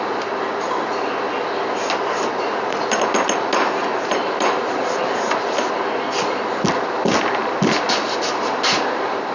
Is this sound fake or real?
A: real